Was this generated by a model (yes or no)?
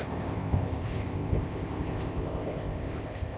yes